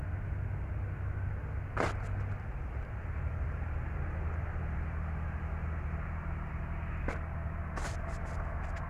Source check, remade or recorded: recorded